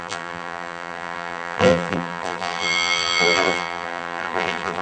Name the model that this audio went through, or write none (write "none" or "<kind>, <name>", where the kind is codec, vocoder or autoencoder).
vocoder, BigVGAN v2